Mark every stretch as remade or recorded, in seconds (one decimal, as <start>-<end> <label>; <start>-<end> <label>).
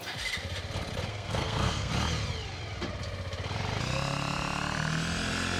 0.0-1.1 recorded; 1.1-1.9 remade; 1.9-5.6 recorded